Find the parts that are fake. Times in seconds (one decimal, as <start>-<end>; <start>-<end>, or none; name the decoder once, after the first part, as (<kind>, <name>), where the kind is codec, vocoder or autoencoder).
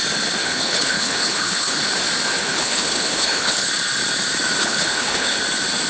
0.4-1.8 (codec, HILCodec); 2.4-3.7; 4.6-5.4